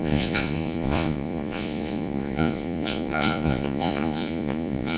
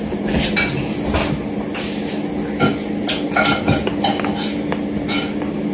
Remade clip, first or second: first